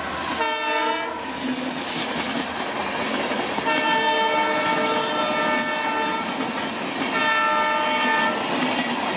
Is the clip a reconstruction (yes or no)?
no